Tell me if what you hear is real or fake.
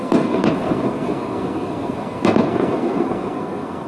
fake